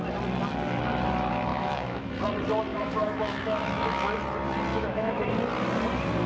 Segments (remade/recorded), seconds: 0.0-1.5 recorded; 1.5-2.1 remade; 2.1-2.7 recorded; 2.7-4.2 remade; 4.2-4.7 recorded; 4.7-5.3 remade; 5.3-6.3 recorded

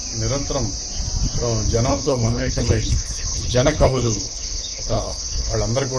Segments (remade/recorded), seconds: 0.0-1.9 recorded; 1.9-5.5 remade; 5.5-6.0 recorded

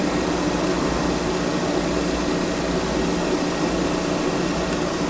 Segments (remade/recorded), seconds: 0.0-5.1 recorded

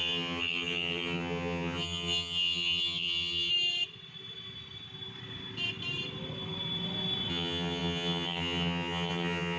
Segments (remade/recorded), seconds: 0.0-3.5 remade; 3.5-7.3 recorded; 7.3-9.6 remade